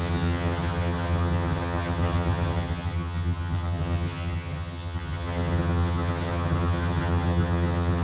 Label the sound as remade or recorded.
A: remade